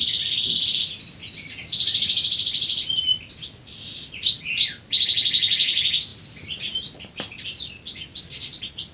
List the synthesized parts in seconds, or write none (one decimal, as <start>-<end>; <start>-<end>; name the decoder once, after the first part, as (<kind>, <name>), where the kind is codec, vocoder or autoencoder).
6.1-6.8 (vocoder, BigVGAN v2)